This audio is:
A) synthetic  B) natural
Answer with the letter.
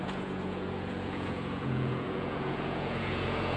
A